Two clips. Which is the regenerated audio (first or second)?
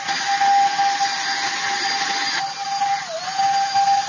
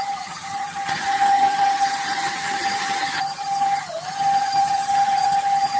second